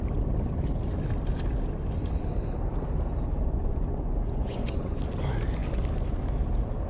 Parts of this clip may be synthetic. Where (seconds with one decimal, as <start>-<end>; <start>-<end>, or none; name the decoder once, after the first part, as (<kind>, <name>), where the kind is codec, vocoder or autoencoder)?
3.3-5.0 (vocoder, Vocos)